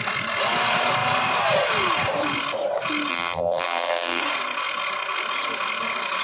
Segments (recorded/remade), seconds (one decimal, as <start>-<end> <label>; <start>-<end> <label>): 0.0-3.1 recorded; 3.1-4.2 remade; 4.2-6.2 recorded